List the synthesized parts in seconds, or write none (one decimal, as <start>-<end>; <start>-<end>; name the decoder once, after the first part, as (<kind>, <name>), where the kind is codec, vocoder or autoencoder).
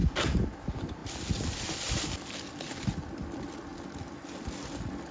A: none